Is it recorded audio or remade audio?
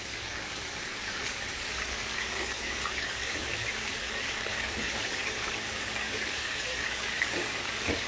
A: remade